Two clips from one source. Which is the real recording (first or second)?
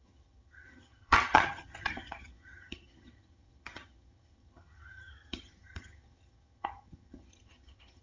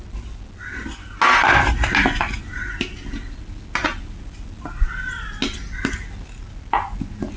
second